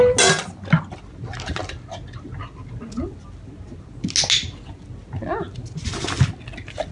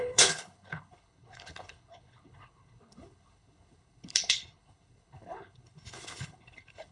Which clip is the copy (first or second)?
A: second